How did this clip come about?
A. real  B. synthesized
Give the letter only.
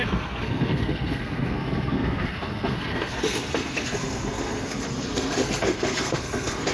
B